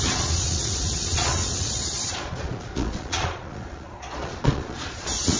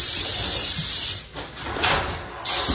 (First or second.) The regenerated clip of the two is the first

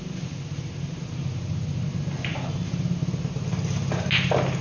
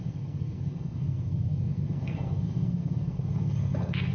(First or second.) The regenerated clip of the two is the second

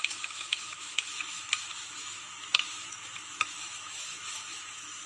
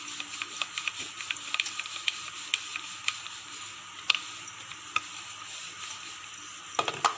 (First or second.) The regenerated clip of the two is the first